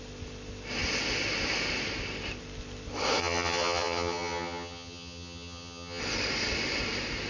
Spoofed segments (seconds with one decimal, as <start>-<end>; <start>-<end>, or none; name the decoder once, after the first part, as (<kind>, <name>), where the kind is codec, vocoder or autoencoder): 3.2-6.0 (vocoder, HiFi-GAN)

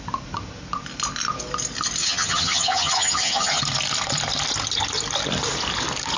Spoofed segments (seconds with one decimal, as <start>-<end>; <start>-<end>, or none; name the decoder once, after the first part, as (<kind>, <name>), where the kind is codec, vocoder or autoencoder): 2.0-3.6 (vocoder, HiFi-GAN)

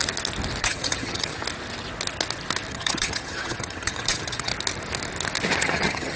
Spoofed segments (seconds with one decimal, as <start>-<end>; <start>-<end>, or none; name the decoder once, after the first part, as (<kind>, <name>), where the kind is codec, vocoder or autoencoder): 0.6-1.4 (vocoder, HiFi-GAN); 2.7-4.5; 5.6-6.2

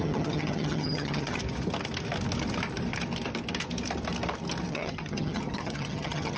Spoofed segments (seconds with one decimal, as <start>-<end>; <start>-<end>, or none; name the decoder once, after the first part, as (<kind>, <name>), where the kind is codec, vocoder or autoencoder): 0.0-1.4 (vocoder, HiFi-GAN); 4.7-6.4

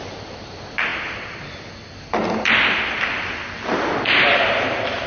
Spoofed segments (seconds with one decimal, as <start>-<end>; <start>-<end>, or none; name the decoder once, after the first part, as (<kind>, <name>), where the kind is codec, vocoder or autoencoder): none

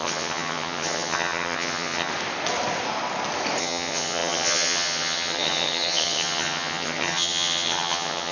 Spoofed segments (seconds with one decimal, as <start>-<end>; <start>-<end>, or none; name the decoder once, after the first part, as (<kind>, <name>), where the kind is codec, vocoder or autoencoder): 0.0-2.1 (vocoder, HiFi-GAN); 3.6-8.3

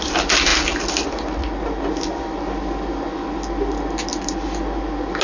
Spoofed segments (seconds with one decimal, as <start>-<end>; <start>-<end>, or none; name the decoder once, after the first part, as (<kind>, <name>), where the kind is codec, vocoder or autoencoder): none